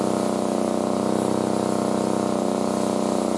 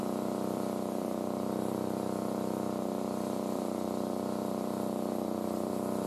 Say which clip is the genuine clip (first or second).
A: first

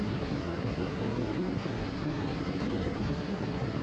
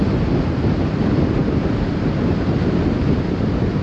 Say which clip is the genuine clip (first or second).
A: second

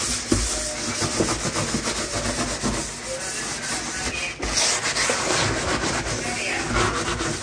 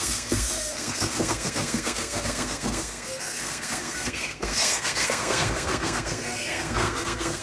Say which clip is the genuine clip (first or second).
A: first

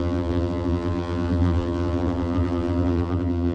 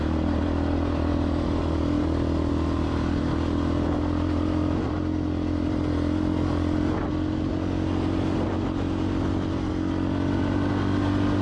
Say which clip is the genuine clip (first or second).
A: second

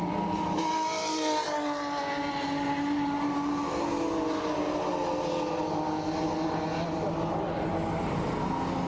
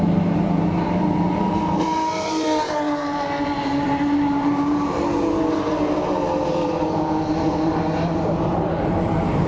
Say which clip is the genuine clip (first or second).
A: first